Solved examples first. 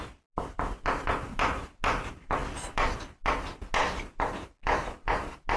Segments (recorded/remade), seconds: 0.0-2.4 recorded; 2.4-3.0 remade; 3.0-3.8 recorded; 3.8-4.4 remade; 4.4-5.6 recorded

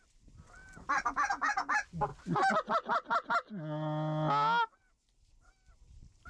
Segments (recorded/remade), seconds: 0.0-6.3 recorded

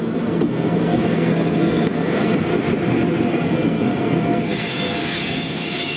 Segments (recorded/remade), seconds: 0.0-2.5 remade; 2.5-3.3 recorded; 3.3-6.0 remade

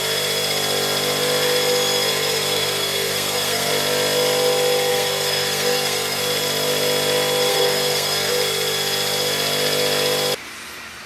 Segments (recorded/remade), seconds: 0.0-2.1 recorded; 2.1-3.7 remade; 3.7-4.9 recorded; 4.9-6.2 remade; 6.2-7.5 recorded; 7.5-8.3 remade; 8.3-11.1 recorded